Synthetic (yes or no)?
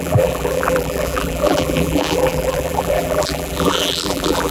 yes